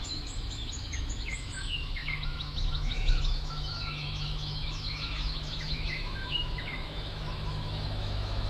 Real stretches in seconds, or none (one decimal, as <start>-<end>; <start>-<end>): none